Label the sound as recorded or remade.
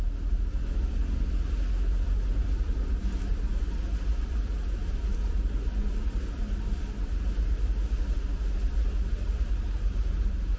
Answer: recorded